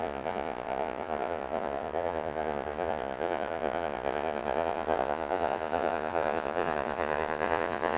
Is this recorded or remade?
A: remade